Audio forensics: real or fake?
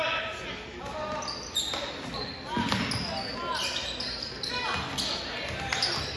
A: real